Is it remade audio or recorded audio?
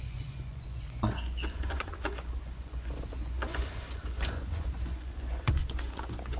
remade